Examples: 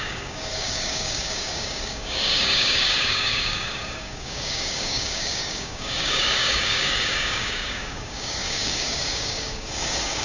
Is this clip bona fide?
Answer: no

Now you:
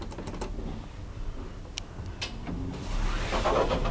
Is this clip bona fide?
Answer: yes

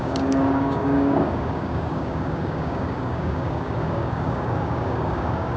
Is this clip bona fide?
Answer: no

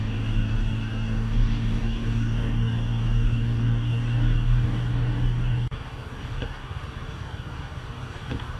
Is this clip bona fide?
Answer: no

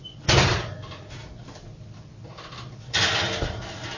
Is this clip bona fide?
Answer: yes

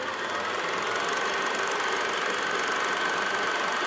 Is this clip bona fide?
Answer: yes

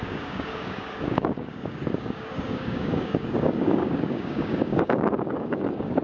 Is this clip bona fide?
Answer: no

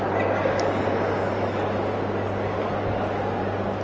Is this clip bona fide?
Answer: yes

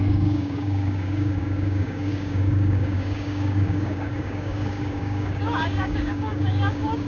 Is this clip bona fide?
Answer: no